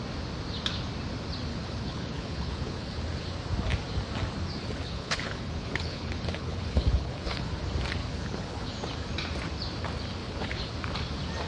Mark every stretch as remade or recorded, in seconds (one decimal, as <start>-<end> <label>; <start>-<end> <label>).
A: 0.0-1.5 recorded; 1.5-3.0 remade; 3.0-4.6 recorded; 4.6-7.6 remade; 7.6-8.0 recorded; 8.0-8.7 remade; 8.7-10.2 recorded; 10.2-10.7 remade; 10.7-11.5 recorded